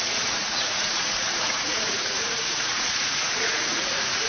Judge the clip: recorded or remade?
remade